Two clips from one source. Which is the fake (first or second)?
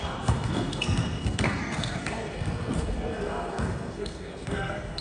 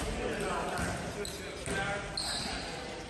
first